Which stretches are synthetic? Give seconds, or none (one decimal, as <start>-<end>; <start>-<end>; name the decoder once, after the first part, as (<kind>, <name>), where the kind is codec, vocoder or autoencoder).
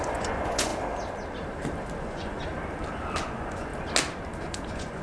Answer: 0.0-0.7 (vocoder, Vocos); 2.0-2.5; 3.2-3.7; 4.5-5.0